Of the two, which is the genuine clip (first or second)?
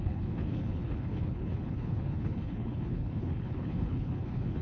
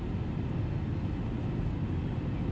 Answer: second